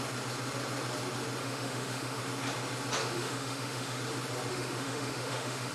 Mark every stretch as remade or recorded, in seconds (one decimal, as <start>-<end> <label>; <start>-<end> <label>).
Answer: 0.0-1.4 recorded; 1.4-2.2 remade; 2.2-3.0 recorded; 3.0-4.0 remade; 4.0-4.5 recorded; 4.5-5.7 remade